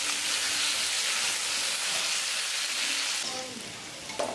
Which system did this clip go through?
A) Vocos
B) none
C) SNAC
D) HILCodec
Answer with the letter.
B